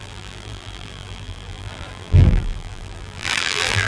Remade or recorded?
remade